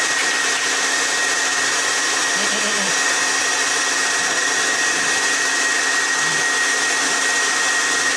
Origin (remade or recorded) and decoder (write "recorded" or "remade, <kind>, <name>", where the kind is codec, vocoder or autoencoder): recorded